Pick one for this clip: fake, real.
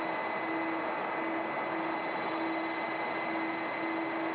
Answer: real